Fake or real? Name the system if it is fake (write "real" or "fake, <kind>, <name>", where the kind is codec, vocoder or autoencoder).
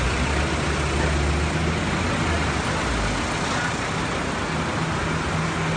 real